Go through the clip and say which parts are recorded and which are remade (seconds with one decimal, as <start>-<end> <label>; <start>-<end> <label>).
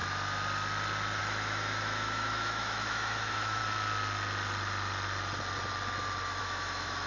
0.0-1.2 recorded; 1.2-3.6 remade; 3.6-6.4 recorded; 6.4-7.1 remade